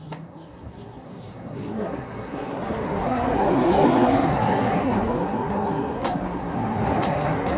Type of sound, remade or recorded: remade